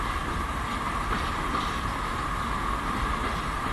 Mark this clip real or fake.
real